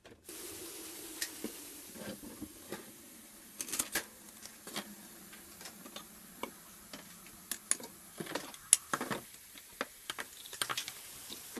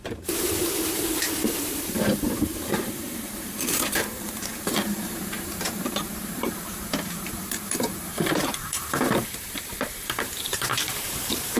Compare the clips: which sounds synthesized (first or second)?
second